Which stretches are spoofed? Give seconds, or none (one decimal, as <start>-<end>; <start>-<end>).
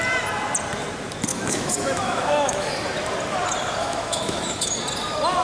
1.3-2.7; 3.8-4.7